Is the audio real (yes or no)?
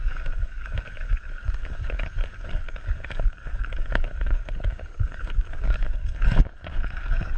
no